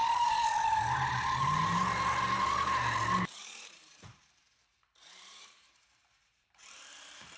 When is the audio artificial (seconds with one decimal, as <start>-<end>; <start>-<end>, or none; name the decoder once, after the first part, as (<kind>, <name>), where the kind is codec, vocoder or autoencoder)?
3.4-7.4 (vocoder, BigVGAN v2)